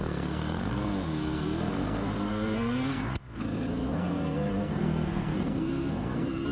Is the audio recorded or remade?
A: remade